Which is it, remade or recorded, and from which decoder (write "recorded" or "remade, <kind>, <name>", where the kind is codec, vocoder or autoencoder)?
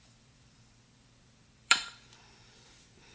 remade, vocoder, BigVGAN v2